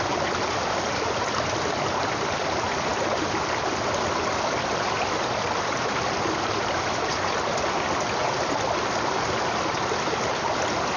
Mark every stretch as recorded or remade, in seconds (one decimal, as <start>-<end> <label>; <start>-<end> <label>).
0.0-11.0 recorded